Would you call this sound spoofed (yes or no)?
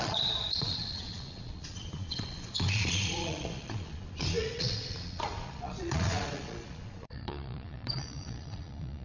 yes